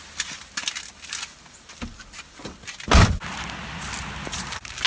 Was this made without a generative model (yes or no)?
yes